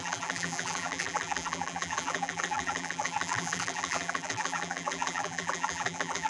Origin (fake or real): fake